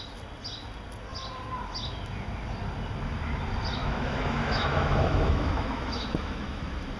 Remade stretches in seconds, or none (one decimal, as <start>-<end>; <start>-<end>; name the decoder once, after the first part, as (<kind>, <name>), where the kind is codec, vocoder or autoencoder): 3.8-6.6 (autoencoder, DAC-VAE)